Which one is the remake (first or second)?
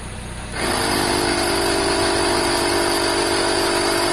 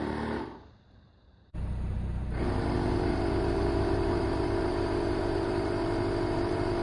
second